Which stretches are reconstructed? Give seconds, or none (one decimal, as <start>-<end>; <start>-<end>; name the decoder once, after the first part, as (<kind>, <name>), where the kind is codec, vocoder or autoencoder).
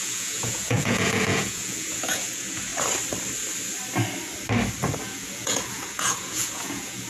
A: 0.0-2.7 (vocoder, Vocos); 5.0-7.1